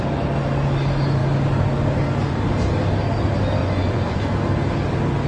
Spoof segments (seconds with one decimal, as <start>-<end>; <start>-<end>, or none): 3.6-4.2